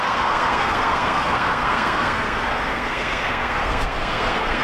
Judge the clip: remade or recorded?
remade